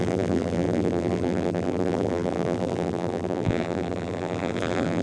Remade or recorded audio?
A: remade